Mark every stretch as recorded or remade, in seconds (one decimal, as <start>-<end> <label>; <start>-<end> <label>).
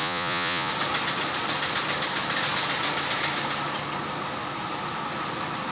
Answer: 0.0-0.7 remade; 0.7-5.7 recorded